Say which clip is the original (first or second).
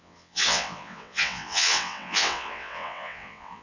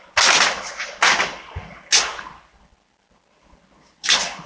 second